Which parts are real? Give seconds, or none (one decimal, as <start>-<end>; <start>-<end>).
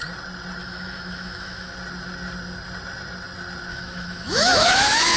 0.0-0.6; 1.7-3.7